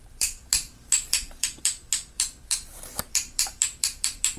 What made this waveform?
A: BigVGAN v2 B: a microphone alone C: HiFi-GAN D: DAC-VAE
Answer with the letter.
A